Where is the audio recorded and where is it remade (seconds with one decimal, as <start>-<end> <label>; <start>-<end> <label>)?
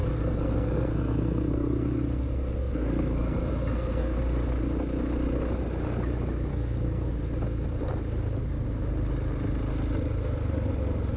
0.0-4.2 remade; 4.2-6.5 recorded; 6.5-7.2 remade; 7.2-11.2 recorded